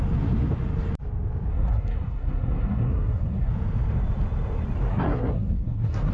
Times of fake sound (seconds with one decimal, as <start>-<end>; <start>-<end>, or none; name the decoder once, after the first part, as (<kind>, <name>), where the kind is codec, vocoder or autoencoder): 1.5-3.5 (codec, SNAC); 4.9-6.1